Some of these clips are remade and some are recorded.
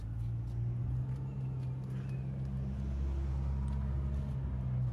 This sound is recorded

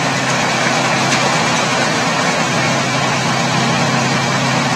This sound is remade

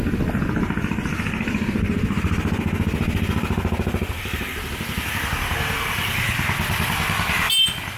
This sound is recorded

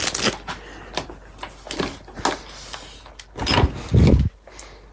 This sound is recorded